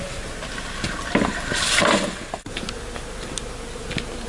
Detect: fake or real real